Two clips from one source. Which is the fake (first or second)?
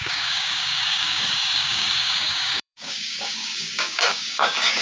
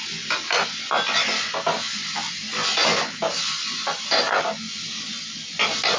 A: first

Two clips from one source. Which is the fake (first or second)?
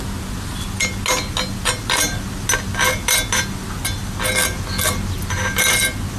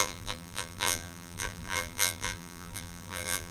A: second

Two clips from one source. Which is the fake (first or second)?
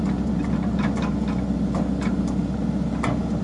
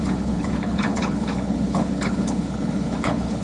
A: second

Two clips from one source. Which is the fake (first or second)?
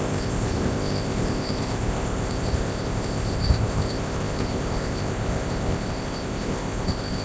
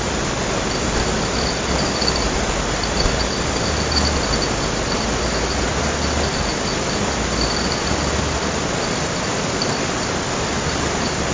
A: first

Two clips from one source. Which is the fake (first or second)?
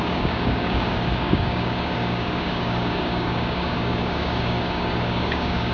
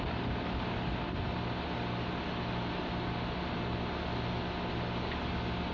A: first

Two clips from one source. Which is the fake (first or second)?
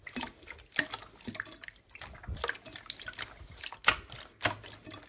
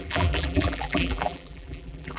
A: second